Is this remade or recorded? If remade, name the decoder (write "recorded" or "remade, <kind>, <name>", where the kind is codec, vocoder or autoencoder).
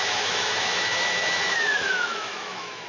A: remade, autoencoder, DAC-VAE